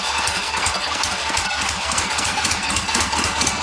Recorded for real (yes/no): no